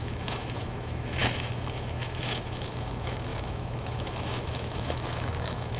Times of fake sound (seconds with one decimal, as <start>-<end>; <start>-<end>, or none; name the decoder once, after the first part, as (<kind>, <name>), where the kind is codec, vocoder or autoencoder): 0.0-5.8 (autoencoder, DAC-VAE)